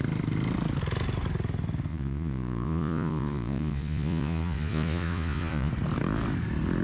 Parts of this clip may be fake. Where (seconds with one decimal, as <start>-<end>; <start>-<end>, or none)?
1.9-5.7